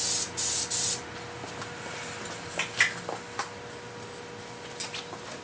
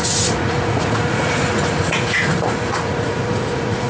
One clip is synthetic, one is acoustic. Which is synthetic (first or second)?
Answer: second